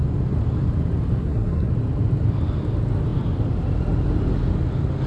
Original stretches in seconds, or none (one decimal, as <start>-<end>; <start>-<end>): 0.0-1.2; 1.7-5.1